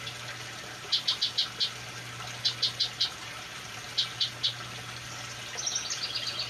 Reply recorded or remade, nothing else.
recorded